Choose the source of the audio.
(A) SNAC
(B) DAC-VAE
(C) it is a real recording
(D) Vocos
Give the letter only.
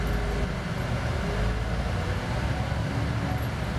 C